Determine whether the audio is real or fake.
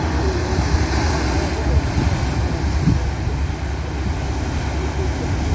real